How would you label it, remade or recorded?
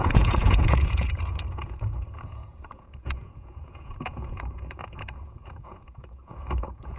remade